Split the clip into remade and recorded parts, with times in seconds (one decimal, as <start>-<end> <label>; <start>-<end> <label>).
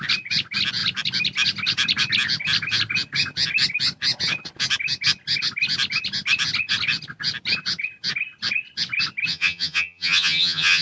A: 0.0-9.3 recorded; 9.3-10.8 remade